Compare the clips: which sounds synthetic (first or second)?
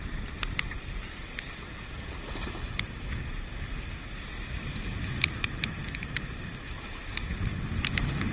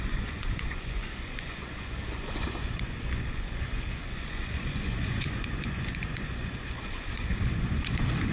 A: second